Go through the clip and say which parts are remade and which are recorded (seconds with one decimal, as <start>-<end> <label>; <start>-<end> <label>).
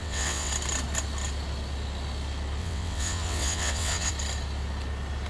0.0-0.5 remade; 0.5-2.6 recorded; 2.6-4.1 remade; 4.1-5.3 recorded